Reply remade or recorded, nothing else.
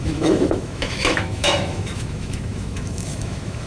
remade